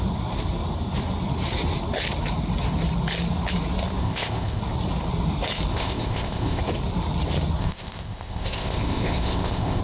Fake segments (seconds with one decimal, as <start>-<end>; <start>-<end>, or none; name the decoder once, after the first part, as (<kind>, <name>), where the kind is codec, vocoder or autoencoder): 4.0-4.6 (codec, ZipCodec); 5.7-6.6; 7.6-9.8